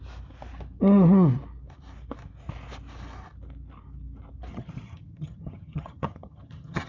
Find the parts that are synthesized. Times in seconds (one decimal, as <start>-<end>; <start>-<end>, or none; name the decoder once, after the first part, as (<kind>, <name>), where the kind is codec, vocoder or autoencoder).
4.5-6.9 (vocoder, HiFi-GAN)